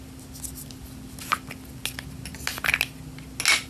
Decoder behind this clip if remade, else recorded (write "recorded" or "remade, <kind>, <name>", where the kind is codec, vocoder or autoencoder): recorded